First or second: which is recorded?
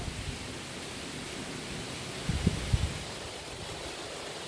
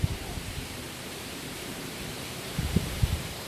first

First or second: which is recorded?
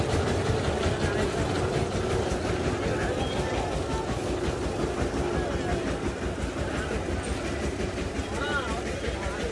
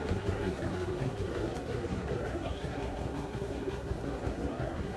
first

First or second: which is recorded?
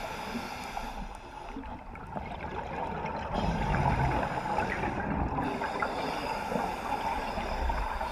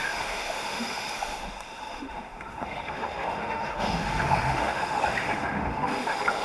first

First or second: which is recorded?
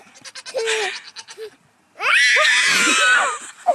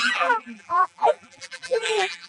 first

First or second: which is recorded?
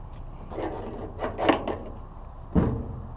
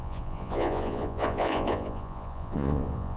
first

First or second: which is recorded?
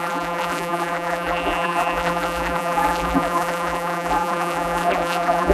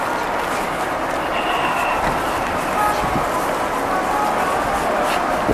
second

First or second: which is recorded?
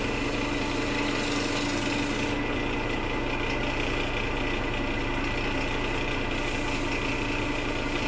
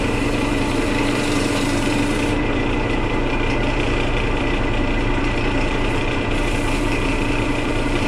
first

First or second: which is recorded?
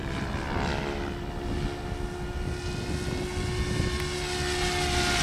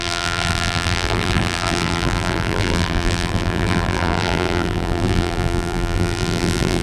first